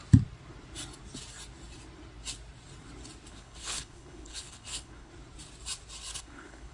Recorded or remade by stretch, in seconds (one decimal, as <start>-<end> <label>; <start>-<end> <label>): 0.0-3.3 recorded; 3.3-5.1 remade; 5.1-6.2 recorded; 6.2-6.7 remade